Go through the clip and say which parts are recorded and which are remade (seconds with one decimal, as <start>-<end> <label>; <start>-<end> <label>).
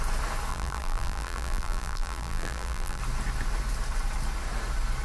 0.0-0.5 recorded; 0.5-3.0 remade; 3.0-5.0 recorded